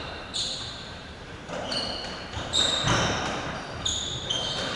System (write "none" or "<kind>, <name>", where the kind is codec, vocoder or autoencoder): vocoder, BigVGAN v2